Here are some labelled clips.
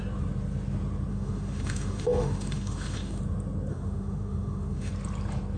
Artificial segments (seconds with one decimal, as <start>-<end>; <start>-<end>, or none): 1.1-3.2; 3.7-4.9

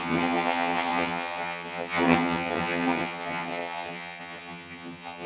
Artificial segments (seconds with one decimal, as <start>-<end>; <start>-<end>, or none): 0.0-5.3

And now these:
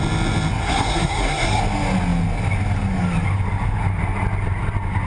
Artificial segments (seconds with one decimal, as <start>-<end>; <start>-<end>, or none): 0.6-1.6